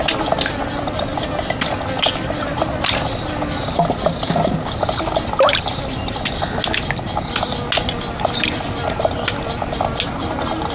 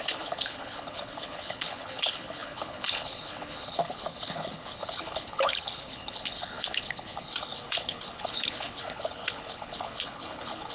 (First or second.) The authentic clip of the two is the first